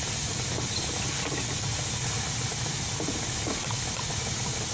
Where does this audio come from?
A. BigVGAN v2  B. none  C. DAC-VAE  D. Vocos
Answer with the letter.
B